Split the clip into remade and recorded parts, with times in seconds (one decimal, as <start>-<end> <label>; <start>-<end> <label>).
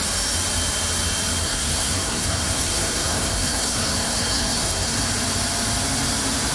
0.0-1.4 recorded; 1.4-5.0 remade; 5.0-6.5 recorded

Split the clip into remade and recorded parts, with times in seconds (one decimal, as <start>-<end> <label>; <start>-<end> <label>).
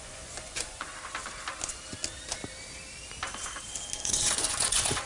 0.0-0.9 remade; 0.9-4.0 recorded; 4.0-5.1 remade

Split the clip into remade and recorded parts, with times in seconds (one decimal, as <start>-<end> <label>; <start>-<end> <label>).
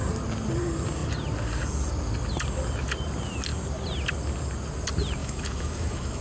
0.0-5.2 recorded; 5.2-6.2 remade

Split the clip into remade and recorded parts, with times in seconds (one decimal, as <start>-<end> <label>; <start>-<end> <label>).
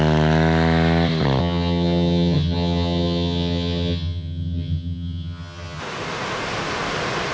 0.0-1.4 recorded; 1.4-5.8 remade; 5.8-7.3 recorded